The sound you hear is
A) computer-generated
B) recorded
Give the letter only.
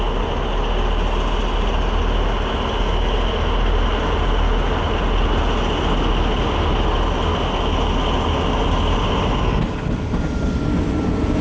B